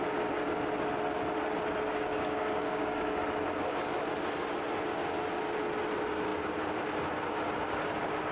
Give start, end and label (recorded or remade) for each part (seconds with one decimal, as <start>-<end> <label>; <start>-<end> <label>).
0.0-1.9 recorded; 1.9-3.2 remade; 3.2-8.3 recorded